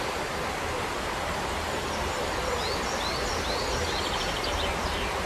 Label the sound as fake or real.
real